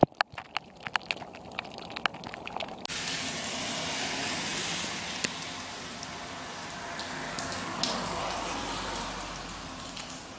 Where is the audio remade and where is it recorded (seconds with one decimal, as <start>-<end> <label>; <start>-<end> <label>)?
0.0-7.0 recorded; 7.0-8.2 remade; 8.2-10.4 recorded